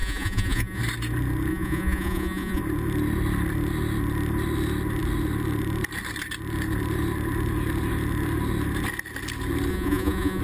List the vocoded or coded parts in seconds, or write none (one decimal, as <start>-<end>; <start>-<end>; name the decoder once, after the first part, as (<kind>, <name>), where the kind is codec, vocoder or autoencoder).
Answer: 0.0-0.8 (vocoder, Vocos); 1.5-2.6; 9.7-10.4